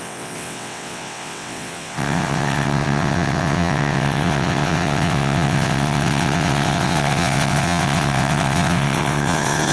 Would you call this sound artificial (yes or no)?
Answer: yes